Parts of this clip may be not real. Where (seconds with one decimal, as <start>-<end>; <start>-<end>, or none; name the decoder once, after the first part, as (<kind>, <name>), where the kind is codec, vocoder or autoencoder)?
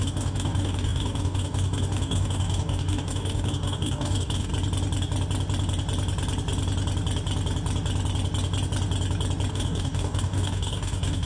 0.0-4.5 (codec, DAC); 9.5-11.3